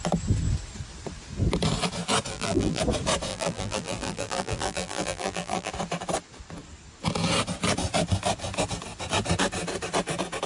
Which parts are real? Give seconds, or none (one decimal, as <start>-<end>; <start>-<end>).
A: 0.0-2.3; 2.8-3.3; 5.7-10.5